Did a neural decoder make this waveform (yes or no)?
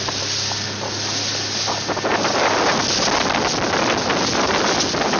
no